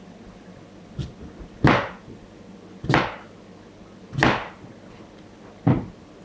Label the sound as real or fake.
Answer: real